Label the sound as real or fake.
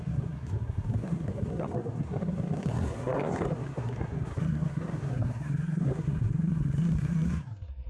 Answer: fake